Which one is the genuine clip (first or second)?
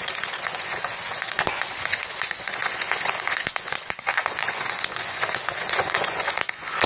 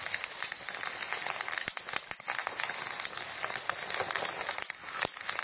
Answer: second